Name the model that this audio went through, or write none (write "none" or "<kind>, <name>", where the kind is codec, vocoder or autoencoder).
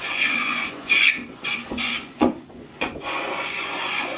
vocoder, Vocos